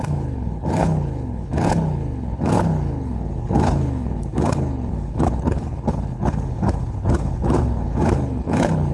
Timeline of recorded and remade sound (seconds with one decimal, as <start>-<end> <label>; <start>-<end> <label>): 0.0-8.9 remade